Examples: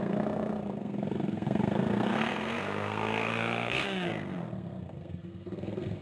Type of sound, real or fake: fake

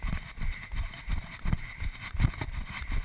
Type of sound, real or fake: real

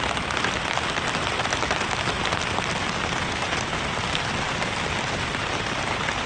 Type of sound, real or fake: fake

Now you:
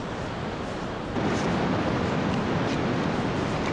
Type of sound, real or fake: real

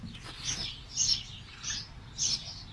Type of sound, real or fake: real